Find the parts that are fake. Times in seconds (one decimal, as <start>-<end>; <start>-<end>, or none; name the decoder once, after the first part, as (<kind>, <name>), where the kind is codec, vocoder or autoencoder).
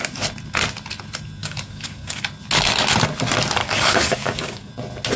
1.4-2.2 (codec, DAC); 3.6-4.7